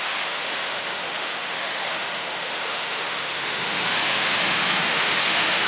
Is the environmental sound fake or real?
fake